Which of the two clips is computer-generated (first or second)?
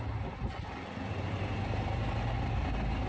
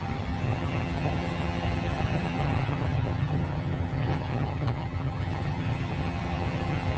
second